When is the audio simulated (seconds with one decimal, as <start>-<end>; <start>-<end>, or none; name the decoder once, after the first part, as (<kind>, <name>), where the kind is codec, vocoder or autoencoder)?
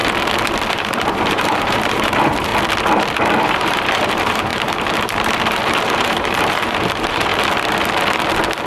0.7-2.5 (vocoder, BigVGAN v2); 3.4-7.3